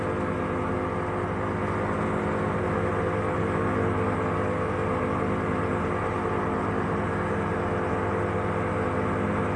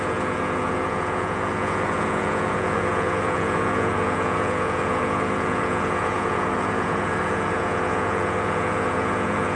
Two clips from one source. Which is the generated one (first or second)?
second